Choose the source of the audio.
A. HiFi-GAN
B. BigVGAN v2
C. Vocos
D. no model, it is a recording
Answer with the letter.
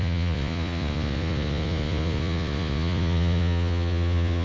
C